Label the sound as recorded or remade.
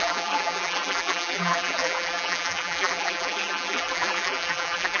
remade